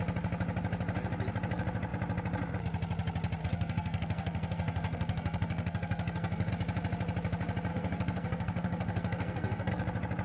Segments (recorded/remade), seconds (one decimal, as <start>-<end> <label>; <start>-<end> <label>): 0.0-3.4 recorded; 3.4-6.5 remade; 6.5-7.7 recorded; 7.7-9.7 remade; 9.7-10.2 recorded